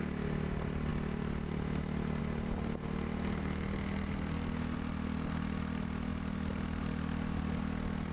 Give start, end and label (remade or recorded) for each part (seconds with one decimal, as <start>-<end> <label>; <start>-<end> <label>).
0.0-8.1 recorded